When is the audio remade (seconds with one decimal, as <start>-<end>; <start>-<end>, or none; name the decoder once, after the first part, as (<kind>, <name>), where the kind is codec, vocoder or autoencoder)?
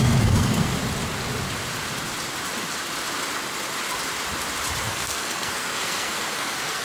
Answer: 0.0-0.7 (codec, SNAC); 4.8-6.8